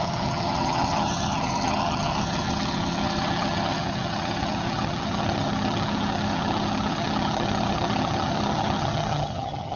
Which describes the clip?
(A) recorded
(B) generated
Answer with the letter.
B